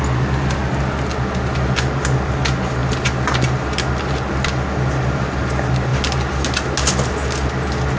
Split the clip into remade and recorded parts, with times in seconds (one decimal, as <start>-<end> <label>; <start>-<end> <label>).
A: 0.0-8.0 recorded